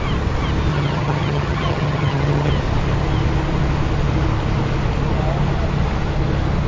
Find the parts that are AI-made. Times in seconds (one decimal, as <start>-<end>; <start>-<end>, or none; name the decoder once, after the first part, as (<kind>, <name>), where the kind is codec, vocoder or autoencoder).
0.7-2.5 (vocoder, HiFi-GAN)